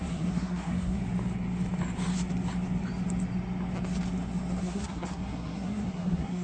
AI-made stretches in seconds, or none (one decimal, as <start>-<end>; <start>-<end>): 0.0-1.0; 4.6-6.4